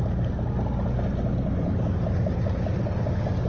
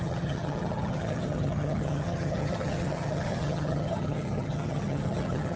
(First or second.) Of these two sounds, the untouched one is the first